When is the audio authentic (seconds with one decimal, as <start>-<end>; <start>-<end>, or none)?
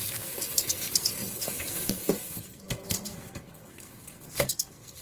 none